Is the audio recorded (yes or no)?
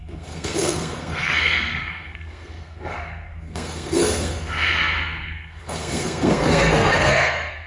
no